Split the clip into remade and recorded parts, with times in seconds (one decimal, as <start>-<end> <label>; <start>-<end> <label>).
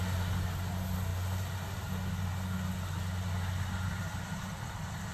0.0-5.1 recorded